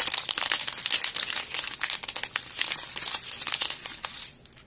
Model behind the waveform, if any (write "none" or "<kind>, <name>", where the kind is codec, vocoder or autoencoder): none